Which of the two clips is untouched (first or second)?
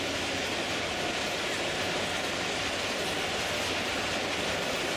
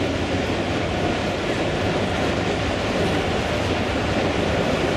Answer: first